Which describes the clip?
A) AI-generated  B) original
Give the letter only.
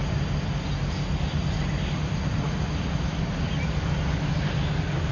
B